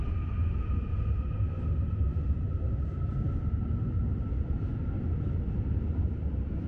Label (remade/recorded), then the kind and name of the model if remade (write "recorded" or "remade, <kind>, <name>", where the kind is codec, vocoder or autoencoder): recorded